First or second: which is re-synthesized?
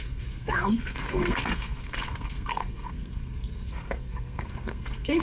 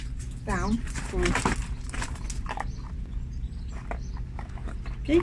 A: first